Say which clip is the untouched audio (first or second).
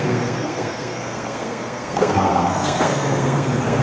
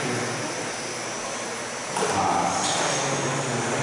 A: second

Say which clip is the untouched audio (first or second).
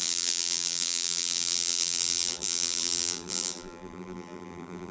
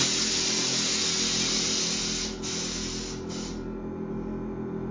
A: second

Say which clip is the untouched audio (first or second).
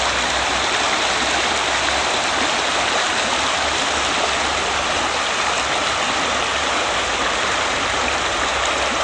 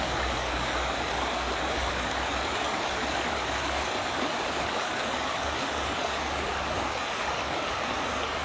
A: first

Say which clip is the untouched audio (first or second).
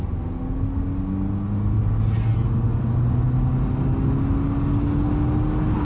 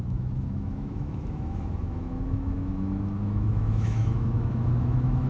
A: first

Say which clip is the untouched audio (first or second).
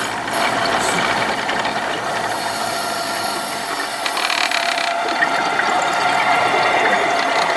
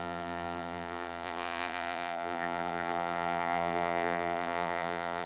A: first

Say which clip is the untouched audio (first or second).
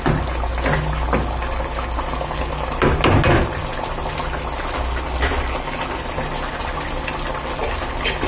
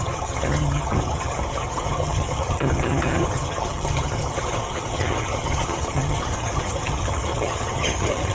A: first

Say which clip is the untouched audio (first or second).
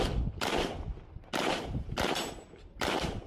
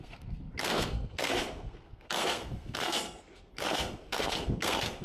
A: first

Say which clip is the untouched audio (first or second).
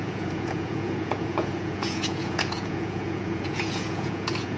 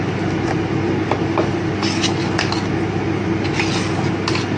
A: second